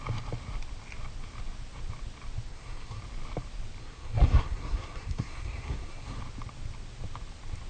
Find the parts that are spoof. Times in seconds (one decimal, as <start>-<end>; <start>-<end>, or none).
2.5-3.0; 3.8-6.2